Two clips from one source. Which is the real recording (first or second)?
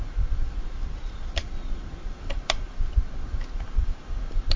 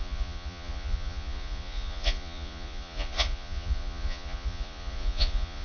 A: first